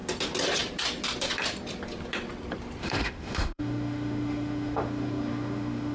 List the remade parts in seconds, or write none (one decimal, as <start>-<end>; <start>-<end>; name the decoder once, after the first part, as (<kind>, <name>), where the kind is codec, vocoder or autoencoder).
2.8-5.9 (autoencoder, DAC-VAE)